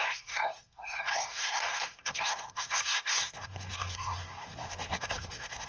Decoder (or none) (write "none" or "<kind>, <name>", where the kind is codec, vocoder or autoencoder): codec, SNAC